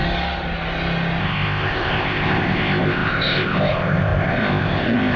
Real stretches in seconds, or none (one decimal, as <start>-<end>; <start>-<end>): 0.0-1.2